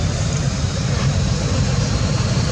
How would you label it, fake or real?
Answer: fake